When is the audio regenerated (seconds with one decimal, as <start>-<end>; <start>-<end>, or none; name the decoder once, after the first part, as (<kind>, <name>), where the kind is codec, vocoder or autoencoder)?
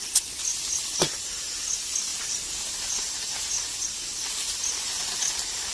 none